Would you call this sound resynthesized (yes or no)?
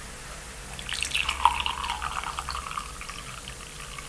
no